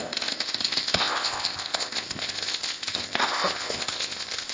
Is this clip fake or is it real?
fake